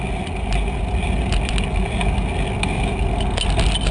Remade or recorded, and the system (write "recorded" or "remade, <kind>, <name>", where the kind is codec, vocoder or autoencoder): recorded